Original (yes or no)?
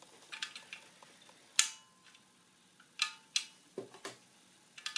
yes